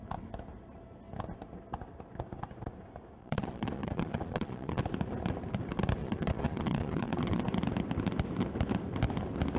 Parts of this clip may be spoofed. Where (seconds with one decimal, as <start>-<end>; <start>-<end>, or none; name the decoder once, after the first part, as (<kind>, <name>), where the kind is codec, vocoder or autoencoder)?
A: 3.2-4.8 (vocoder, Vocos); 6.0-7.4